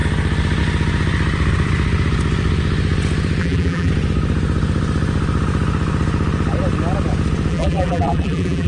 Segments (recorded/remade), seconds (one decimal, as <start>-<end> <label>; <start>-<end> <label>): 0.0-3.4 recorded; 3.4-3.9 remade; 3.9-7.5 recorded; 7.5-8.7 remade